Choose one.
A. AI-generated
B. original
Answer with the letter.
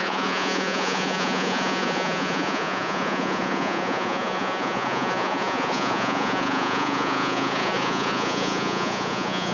A